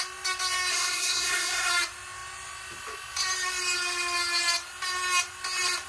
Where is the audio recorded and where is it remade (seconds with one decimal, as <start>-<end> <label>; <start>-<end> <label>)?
0.0-0.7 recorded; 0.7-1.7 remade; 1.7-5.9 recorded